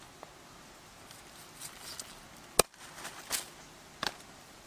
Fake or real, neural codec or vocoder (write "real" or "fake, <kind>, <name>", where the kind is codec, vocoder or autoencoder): real